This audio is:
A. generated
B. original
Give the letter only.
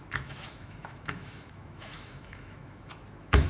A